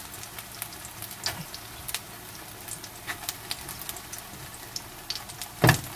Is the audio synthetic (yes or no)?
no